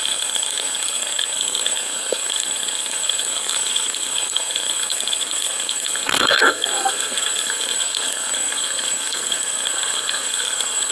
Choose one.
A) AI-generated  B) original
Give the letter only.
A